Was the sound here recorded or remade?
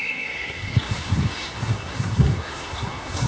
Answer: remade